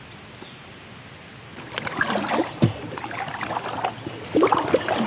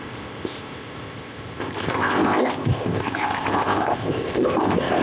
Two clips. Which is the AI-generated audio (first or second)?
second